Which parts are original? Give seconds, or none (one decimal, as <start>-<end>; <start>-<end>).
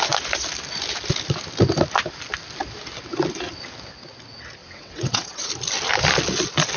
0.0-4.6; 5.5-6.8